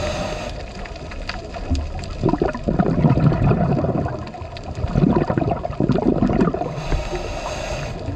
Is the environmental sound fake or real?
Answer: real